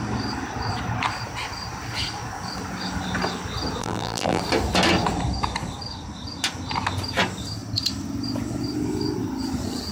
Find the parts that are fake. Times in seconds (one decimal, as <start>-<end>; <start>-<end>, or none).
3.8-4.4